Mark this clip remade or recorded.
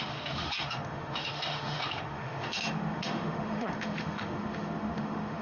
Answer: remade